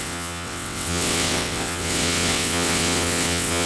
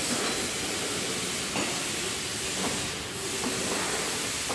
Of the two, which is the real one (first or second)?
second